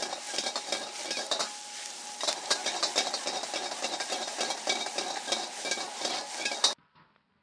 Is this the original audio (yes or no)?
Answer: yes